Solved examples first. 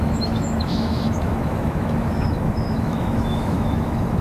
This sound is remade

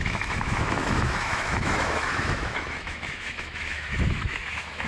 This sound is remade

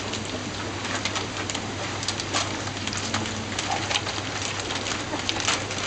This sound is recorded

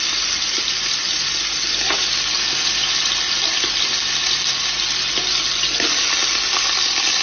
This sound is recorded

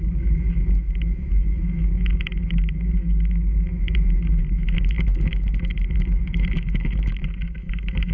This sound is remade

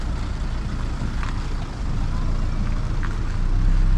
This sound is recorded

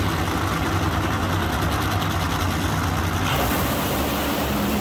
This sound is recorded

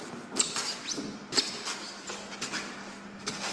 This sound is recorded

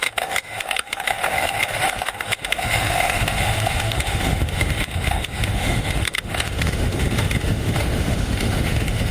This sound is remade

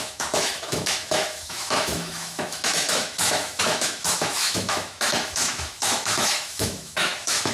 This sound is remade